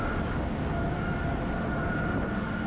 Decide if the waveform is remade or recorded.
recorded